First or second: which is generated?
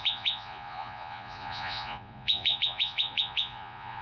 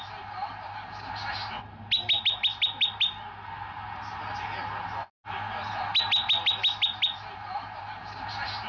first